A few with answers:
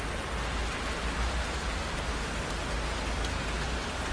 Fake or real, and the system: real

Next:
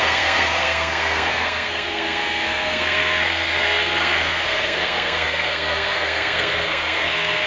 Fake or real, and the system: fake, codec, SNAC